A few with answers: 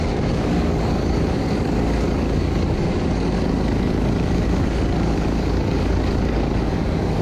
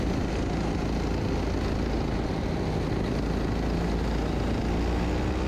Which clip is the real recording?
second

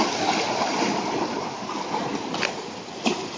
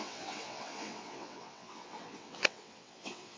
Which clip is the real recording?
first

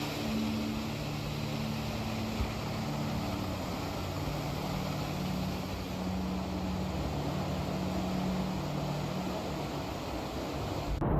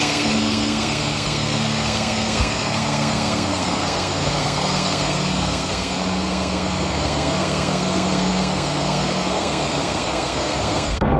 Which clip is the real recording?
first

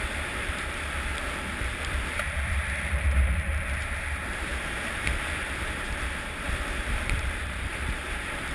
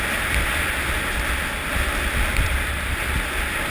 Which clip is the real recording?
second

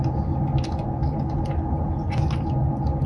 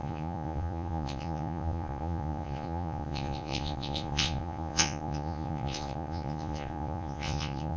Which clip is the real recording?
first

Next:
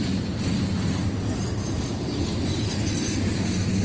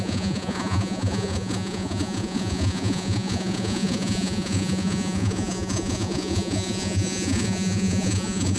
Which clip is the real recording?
first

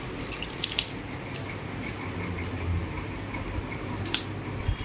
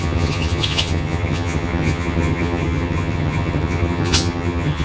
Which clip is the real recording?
first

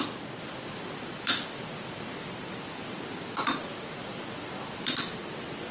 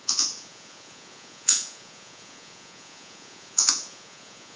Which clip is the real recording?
first